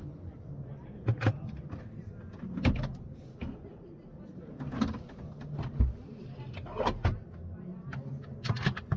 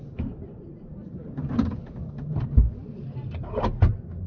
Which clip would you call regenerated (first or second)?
second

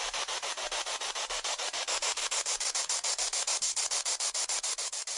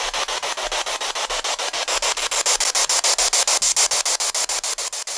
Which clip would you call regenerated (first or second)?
first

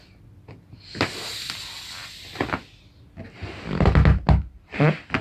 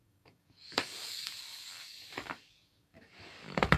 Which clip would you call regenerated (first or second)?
second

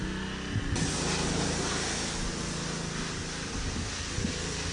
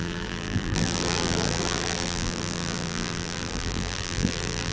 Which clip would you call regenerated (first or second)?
second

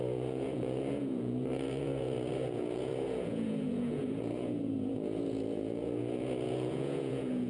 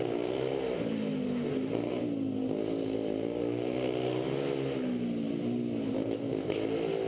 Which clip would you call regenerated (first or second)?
first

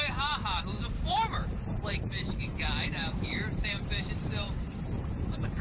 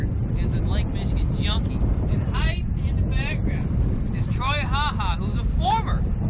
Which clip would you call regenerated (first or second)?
first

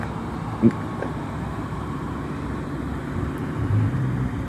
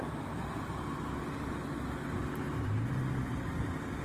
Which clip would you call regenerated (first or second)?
first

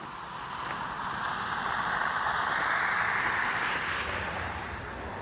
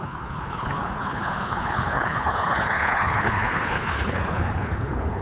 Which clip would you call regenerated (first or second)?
second